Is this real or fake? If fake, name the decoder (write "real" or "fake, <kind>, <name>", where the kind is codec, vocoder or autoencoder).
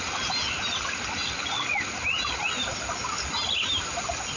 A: real